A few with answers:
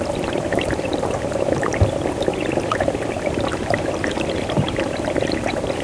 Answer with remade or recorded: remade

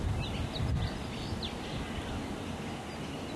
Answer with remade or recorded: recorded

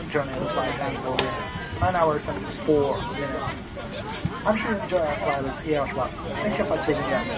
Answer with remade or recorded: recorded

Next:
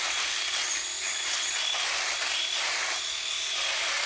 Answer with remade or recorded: recorded